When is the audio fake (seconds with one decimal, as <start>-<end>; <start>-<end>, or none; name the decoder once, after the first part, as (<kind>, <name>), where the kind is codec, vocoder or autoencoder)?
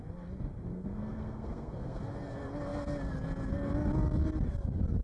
0.7-2.0 (codec, SNAC)